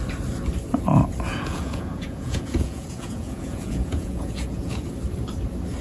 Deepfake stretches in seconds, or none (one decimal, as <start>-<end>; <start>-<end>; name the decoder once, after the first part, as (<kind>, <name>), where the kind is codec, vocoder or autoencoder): 1.3-4.8 (vocoder, Vocos)